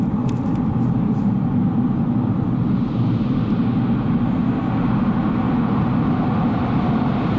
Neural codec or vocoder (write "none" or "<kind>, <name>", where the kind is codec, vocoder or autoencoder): none